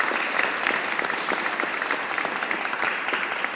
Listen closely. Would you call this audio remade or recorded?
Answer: recorded